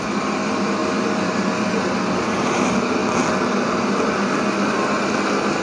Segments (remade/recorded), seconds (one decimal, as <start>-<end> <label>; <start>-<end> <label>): 0.0-0.8 remade; 0.8-2.2 recorded; 2.2-3.0 remade; 3.0-5.6 recorded